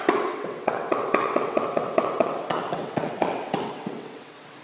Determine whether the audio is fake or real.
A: fake